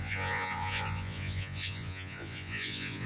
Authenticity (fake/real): fake